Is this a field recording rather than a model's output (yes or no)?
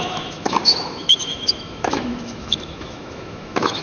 no